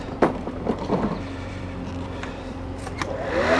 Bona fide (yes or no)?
no